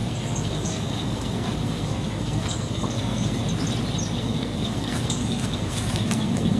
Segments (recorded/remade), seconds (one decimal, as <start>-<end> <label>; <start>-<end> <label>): 0.0-3.4 remade; 3.4-4.2 recorded; 4.2-6.6 remade